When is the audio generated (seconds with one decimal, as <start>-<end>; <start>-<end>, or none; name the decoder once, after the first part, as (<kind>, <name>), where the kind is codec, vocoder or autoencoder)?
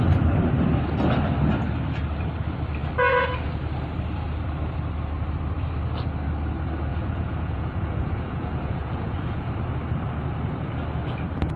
6.9-9.5 (vocoder, Vocos)